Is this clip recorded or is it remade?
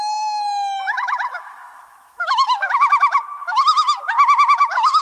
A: remade